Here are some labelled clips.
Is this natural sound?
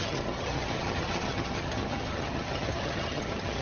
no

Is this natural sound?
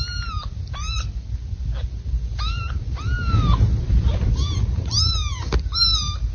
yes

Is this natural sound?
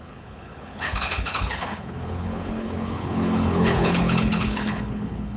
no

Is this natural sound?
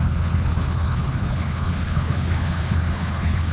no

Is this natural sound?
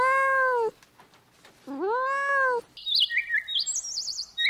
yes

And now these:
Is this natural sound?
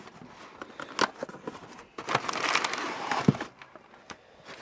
yes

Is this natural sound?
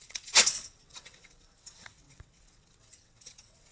no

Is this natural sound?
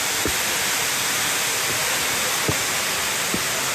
yes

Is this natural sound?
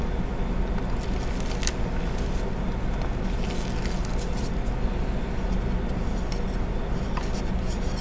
yes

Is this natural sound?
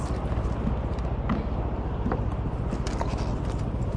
yes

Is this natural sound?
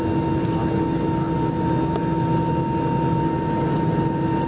yes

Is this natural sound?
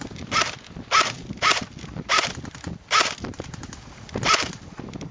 yes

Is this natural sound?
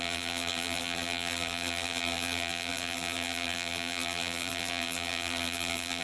no